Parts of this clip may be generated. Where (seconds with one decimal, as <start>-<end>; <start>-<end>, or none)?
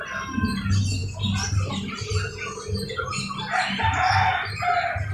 none